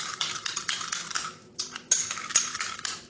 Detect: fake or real real